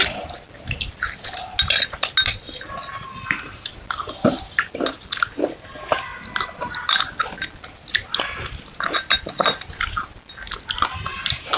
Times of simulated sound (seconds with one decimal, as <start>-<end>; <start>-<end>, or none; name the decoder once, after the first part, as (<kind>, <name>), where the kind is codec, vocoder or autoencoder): none